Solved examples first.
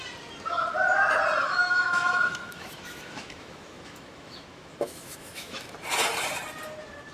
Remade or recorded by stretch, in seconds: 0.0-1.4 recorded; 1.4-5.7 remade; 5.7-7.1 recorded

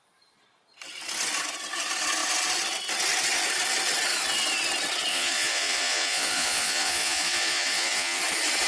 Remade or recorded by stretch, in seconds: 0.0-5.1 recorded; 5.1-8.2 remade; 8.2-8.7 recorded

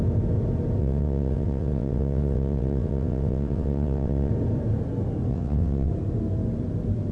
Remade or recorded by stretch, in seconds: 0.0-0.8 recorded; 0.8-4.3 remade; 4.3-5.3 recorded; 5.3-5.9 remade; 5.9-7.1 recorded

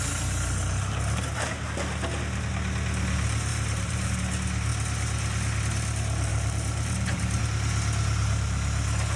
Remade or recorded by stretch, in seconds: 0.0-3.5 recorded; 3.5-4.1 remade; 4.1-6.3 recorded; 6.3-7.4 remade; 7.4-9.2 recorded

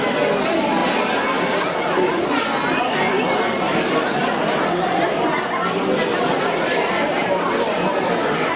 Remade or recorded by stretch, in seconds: 0.0-4.2 recorded; 4.2-5.0 remade; 5.0-7.2 recorded; 7.2-8.1 remade; 8.1-8.6 recorded

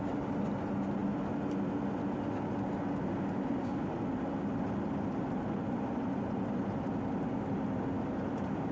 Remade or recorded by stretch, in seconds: 0.0-8.7 recorded

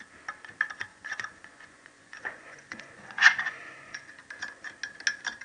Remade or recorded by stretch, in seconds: 0.0-0.9 recorded; 0.9-4.1 remade; 4.1-5.4 recorded

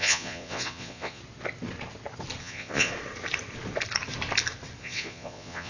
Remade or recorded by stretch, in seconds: 0.0-1.2 remade; 1.2-2.4 recorded; 2.4-2.9 remade; 2.9-4.8 recorded; 4.8-5.7 remade